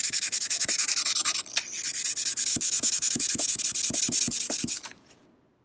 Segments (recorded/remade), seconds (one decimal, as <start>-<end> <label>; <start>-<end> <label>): 0.0-0.9 remade; 0.9-2.5 recorded; 2.5-3.6 remade; 3.6-5.6 recorded